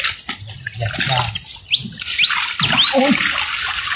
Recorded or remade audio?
recorded